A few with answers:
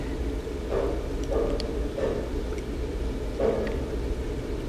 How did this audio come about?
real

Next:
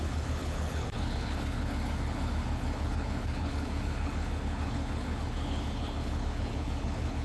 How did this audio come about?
fake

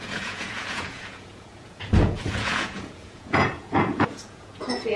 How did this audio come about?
fake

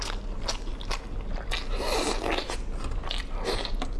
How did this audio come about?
real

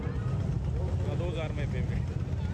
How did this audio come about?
real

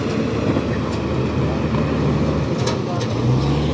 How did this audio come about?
real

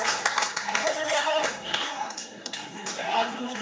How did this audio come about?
fake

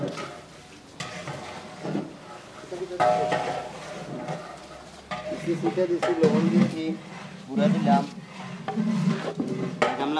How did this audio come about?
real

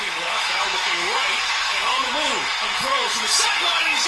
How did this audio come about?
fake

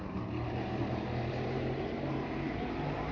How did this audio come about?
fake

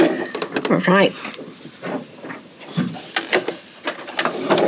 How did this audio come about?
real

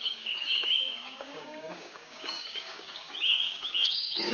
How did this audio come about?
fake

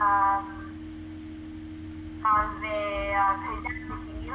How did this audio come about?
real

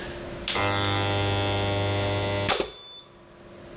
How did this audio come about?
real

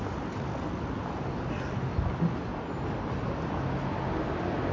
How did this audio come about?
real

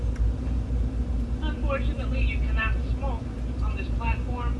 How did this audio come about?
real